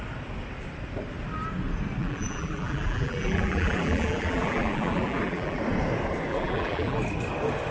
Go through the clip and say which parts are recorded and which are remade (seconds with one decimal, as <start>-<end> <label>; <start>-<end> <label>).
0.0-2.0 recorded; 2.0-5.6 remade; 5.6-6.3 recorded; 6.3-7.0 remade; 7.0-7.7 recorded